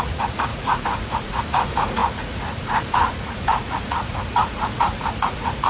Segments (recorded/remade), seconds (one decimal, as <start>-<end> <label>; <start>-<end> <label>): 0.0-5.7 remade